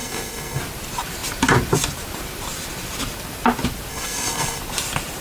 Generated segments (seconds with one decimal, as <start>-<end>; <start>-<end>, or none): 0.0-0.6; 3.9-4.6